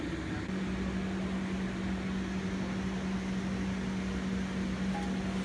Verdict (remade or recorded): recorded